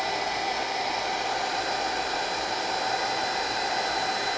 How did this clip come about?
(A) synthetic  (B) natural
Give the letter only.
B